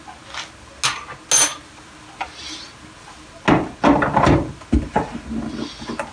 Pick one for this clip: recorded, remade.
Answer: recorded